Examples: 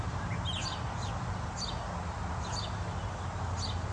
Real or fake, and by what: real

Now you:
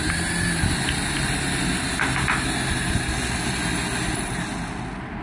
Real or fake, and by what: real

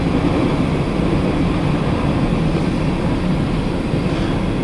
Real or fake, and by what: real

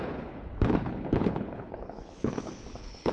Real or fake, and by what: fake, codec, HILCodec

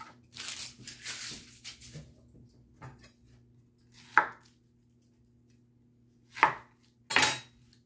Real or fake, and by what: real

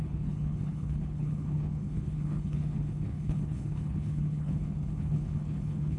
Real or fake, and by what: fake, codec, HILCodec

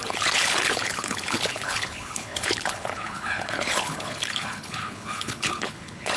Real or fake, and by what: fake, codec, HILCodec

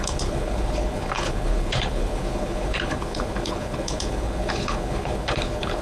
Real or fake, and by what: fake, codec, HILCodec